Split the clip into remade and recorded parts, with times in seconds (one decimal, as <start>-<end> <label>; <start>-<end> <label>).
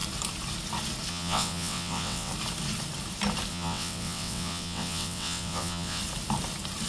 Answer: 0.0-1.1 recorded; 1.1-2.3 remade; 2.3-3.5 recorded; 3.5-6.0 remade; 6.0-6.9 recorded